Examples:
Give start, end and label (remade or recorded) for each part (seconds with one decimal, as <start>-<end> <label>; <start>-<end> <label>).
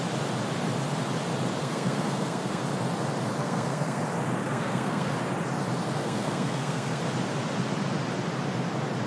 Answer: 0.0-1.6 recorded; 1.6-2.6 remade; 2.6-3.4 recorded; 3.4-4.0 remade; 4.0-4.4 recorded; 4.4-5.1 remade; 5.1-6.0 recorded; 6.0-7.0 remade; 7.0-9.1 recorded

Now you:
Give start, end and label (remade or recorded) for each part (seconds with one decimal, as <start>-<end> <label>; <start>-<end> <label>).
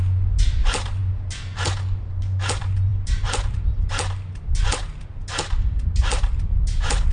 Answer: 0.0-7.1 recorded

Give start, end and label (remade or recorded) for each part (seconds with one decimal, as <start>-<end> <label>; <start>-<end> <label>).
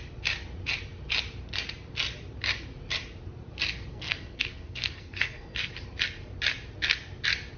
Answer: 0.0-3.9 recorded; 3.9-5.7 remade; 5.7-7.6 recorded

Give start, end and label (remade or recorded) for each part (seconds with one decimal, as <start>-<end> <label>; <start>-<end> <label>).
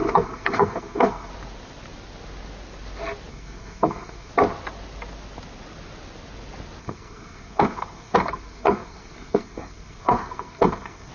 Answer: 0.0-1.3 remade; 1.3-3.3 recorded; 3.3-4.3 remade; 4.3-6.8 recorded; 6.8-11.1 remade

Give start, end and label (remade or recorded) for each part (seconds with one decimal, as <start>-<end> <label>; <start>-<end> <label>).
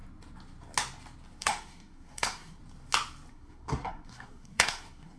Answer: 0.0-1.4 recorded; 1.4-2.6 remade; 2.6-3.3 recorded; 3.3-5.2 remade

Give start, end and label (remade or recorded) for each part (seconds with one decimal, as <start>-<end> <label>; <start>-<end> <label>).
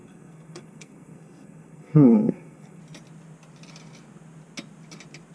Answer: 0.0-2.8 remade; 2.8-5.3 recorded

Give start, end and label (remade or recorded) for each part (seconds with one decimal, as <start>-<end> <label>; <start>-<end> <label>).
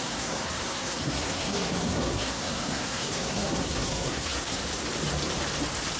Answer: 0.0-4.6 remade; 4.6-6.0 recorded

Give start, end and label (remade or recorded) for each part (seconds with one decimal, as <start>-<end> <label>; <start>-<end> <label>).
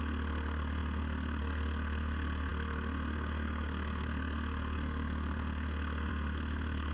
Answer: 0.0-6.9 remade